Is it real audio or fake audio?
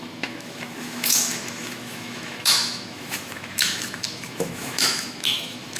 fake